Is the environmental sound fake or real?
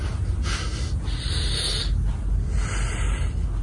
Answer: real